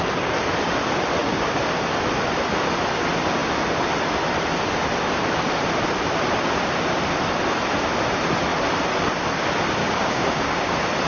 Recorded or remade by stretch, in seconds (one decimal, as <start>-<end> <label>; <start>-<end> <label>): 0.0-1.2 recorded; 1.2-1.7 remade; 1.7-9.8 recorded; 9.8-10.7 remade; 10.7-11.1 recorded